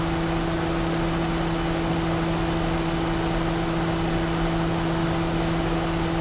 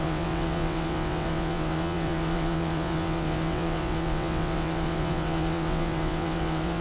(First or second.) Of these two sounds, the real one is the first